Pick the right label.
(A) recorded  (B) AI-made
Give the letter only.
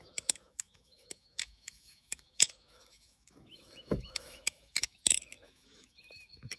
B